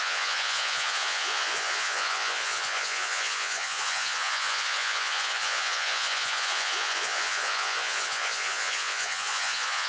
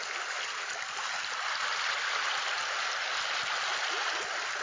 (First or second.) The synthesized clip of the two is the first